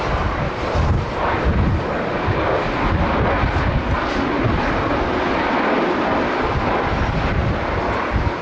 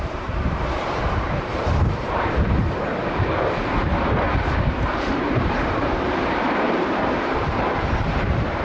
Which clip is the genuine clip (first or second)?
first